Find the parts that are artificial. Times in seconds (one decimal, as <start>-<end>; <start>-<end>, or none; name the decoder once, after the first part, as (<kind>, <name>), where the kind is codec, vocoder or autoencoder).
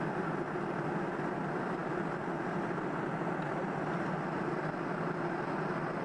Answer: none